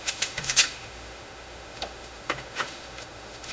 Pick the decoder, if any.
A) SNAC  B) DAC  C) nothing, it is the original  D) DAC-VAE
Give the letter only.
D